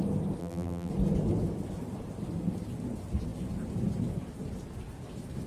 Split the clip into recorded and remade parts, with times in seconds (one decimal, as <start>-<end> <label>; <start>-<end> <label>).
0.0-0.4 recorded; 0.4-0.9 remade; 0.9-5.5 recorded